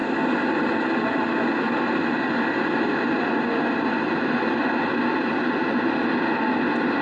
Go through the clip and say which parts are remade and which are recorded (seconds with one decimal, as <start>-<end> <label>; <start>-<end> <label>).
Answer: 0.0-7.0 recorded